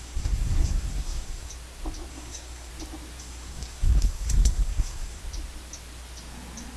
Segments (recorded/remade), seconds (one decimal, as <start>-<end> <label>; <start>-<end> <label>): 0.0-1.5 remade; 1.5-2.1 recorded; 2.1-2.7 remade; 2.7-3.2 recorded; 3.2-5.2 remade; 5.2-6.8 recorded